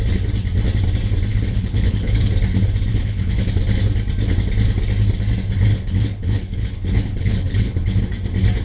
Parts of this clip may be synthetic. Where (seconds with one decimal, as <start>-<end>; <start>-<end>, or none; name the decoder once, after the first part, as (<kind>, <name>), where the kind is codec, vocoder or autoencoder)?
1.3-2.3 (codec, HILCodec); 2.9-3.5; 5.7-8.0